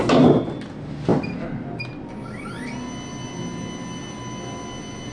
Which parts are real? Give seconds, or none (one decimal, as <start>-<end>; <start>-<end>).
0.0-5.1